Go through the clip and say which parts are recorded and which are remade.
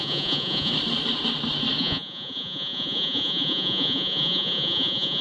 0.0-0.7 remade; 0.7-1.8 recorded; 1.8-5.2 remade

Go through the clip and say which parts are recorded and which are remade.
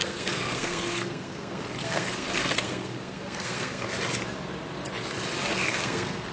0.0-3.8 remade; 3.8-5.5 recorded; 5.5-6.3 remade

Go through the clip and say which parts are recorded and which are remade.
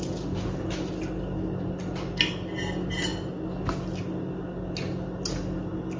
0.0-6.0 recorded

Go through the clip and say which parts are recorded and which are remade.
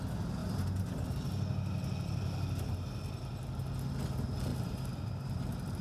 0.0-4.5 recorded; 4.5-5.3 remade; 5.3-5.8 recorded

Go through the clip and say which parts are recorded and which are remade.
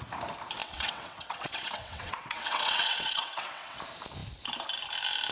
0.0-0.6 recorded; 0.6-3.8 remade; 3.8-5.3 recorded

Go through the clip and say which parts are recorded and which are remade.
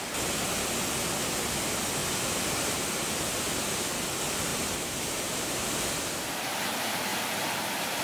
0.0-4.5 recorded; 4.5-5.5 remade; 5.5-8.0 recorded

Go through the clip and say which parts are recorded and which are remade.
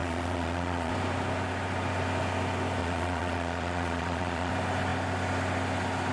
0.0-0.9 remade; 0.9-2.8 recorded; 2.8-4.5 remade; 4.5-6.1 recorded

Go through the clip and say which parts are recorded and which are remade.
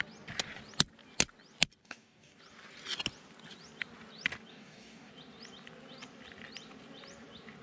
0.0-1.8 recorded; 1.8-2.4 remade; 2.4-4.5 recorded; 4.5-5.1 remade; 5.1-7.6 recorded